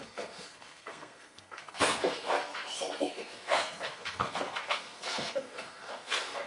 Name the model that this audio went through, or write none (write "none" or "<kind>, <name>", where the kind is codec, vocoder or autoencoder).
codec, SNAC